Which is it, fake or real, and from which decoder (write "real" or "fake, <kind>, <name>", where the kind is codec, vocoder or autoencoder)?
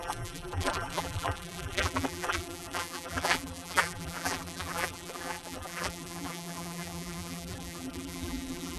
fake, vocoder, BigVGAN v2